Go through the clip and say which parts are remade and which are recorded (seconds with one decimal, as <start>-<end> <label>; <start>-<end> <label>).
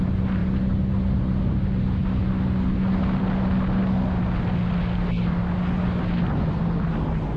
0.0-7.4 recorded